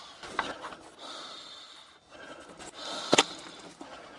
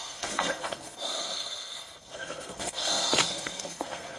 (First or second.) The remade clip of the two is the second